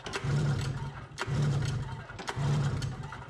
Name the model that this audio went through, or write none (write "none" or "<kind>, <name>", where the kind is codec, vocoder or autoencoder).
none